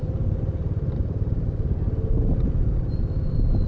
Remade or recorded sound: recorded